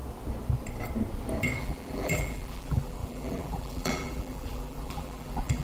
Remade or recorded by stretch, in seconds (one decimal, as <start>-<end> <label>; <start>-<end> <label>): 0.0-1.6 recorded; 1.6-5.6 remade